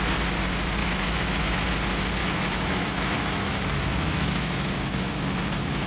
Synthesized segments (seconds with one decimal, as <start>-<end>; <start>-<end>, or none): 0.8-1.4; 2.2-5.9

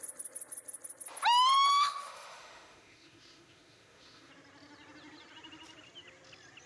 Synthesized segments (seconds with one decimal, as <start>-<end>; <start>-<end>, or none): 1.7-4.3

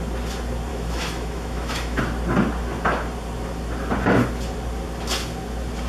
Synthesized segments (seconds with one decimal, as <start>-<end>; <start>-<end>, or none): 0.7-2.0